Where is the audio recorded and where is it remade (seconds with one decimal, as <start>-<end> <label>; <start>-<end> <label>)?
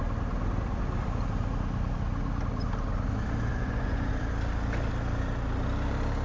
0.0-3.5 recorded; 3.5-4.1 remade; 4.1-6.2 recorded